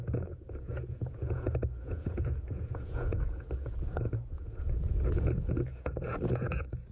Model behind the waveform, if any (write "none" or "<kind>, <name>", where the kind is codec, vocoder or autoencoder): vocoder, Vocos